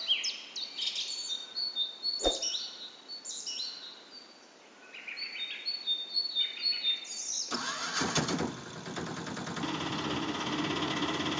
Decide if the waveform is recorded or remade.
recorded